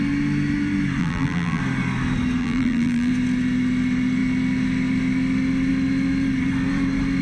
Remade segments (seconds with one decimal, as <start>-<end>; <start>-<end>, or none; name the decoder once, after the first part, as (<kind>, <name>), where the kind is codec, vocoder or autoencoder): 1.0-1.6 (vocoder, BigVGAN v2); 2.4-3.1